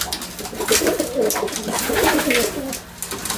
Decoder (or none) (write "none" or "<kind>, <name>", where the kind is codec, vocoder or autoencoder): none